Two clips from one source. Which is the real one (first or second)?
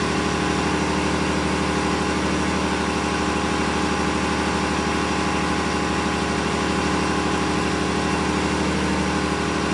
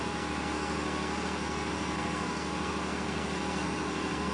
first